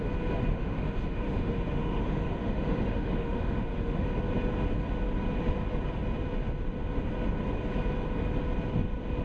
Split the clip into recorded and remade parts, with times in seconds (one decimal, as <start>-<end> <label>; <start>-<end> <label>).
0.0-0.5 recorded; 0.5-4.0 remade; 4.0-9.2 recorded